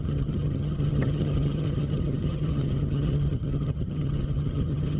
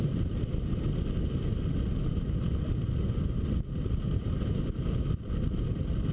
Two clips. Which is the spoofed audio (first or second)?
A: first